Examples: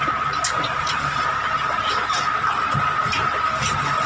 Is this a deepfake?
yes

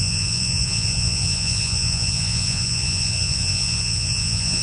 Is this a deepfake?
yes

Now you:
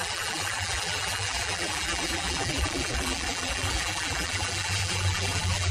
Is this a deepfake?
yes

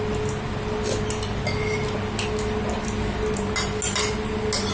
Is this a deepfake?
no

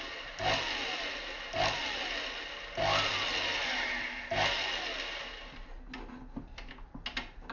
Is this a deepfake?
no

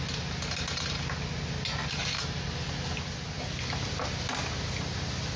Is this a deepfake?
no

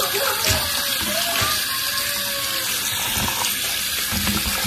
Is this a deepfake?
no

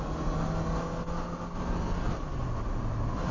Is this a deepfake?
no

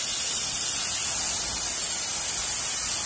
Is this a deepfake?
no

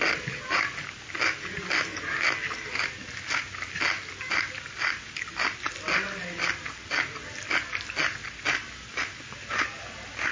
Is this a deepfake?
no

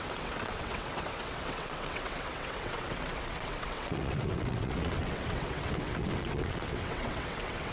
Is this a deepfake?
yes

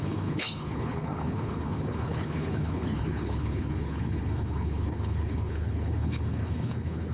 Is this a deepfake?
yes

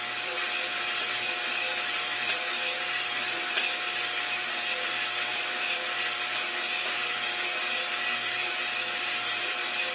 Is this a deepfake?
yes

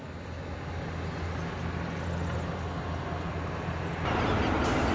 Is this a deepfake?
no